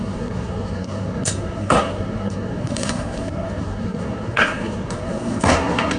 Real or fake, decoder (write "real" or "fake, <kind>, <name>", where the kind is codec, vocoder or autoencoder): fake, codec, SNAC